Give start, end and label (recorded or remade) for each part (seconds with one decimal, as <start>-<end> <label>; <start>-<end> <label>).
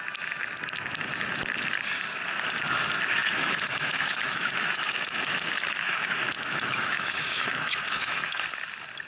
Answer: 0.0-3.2 recorded; 3.2-8.4 remade; 8.4-9.1 recorded